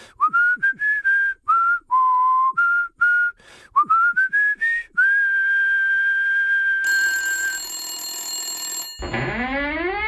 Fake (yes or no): no